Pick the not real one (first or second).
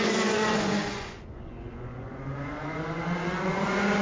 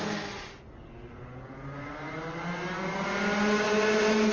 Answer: first